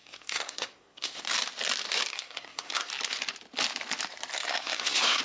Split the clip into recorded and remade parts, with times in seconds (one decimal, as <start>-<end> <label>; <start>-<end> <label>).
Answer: 0.0-1.2 remade; 1.2-2.1 recorded; 2.1-2.9 remade; 2.9-4.3 recorded; 4.3-5.2 remade